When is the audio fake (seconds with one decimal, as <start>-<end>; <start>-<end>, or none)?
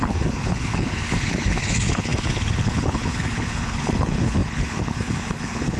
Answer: 0.0-5.8